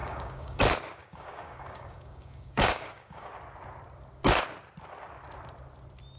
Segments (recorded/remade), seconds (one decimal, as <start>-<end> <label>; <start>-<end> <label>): 0.0-0.6 remade; 0.6-1.0 recorded; 1.0-3.3 remade; 3.3-6.2 recorded